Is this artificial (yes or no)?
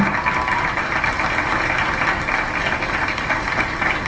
no